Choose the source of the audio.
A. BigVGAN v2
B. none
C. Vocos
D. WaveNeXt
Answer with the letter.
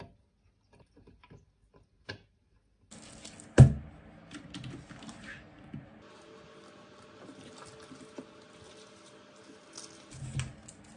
B